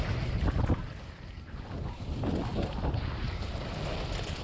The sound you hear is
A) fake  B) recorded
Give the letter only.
B